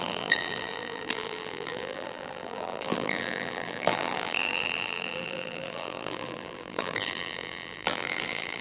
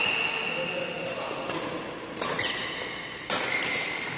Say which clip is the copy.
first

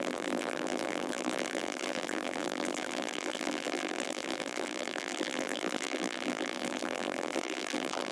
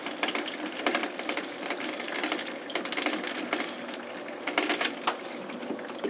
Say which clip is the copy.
first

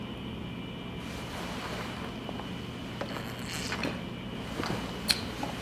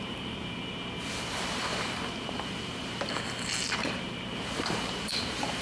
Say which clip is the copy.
second